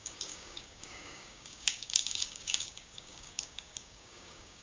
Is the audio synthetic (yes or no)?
yes